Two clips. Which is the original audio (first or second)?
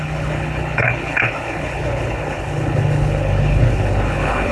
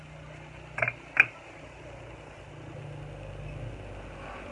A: second